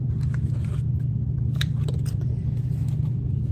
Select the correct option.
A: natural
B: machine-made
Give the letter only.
B